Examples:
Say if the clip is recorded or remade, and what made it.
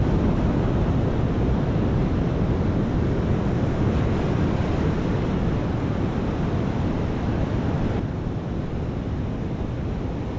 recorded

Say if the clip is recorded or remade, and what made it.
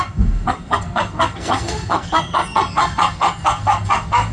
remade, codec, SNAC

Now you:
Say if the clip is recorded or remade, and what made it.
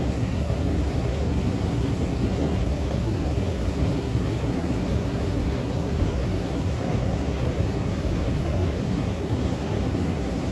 remade, codec, SNAC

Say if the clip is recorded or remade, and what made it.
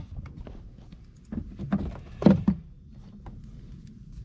recorded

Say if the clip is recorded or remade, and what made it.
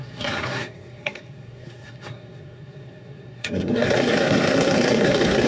remade, codec, SNAC